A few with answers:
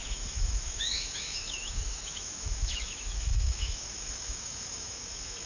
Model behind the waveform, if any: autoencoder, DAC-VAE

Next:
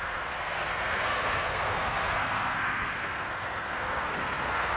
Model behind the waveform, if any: codec, SNAC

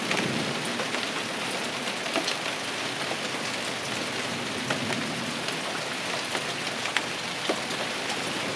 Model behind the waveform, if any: none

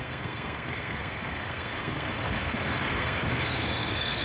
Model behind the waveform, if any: codec, SNAC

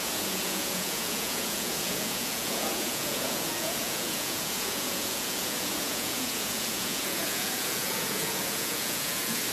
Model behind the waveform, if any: vocoder, Vocos